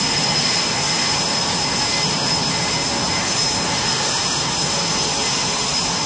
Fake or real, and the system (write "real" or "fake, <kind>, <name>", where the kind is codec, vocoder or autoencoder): real